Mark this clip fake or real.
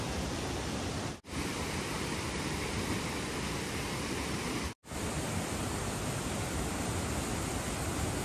real